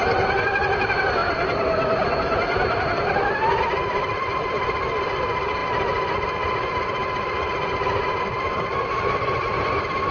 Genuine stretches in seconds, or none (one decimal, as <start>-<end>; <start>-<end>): 0.0-10.1